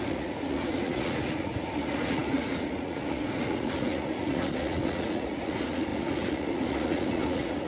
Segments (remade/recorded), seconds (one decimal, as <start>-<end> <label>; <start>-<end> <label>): 0.0-7.7 remade